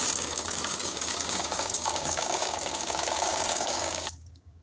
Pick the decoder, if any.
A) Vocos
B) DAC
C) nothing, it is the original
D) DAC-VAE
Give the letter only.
B